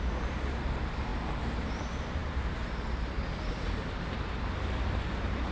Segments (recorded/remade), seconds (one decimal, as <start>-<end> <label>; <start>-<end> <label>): 0.0-5.5 recorded